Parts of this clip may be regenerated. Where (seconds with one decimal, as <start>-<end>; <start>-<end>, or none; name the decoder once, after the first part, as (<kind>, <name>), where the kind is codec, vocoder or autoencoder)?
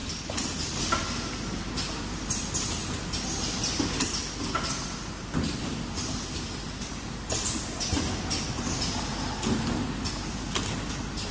2.8-7.8 (vocoder, BigVGAN v2)